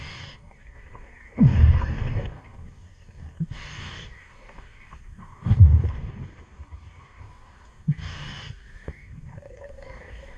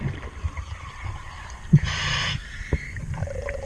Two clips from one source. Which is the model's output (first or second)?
first